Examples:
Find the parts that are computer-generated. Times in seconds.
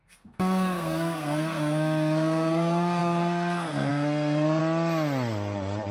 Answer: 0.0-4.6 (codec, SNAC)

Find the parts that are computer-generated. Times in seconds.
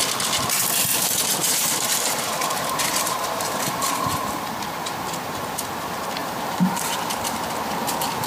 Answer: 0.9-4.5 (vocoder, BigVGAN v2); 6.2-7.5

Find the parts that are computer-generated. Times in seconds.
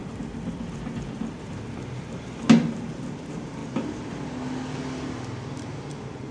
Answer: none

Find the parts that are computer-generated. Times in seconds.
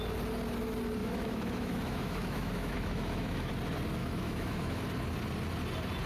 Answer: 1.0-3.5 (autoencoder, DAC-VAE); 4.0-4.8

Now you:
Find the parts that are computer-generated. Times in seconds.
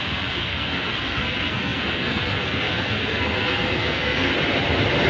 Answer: 0.0-4.3 (codec, SNAC)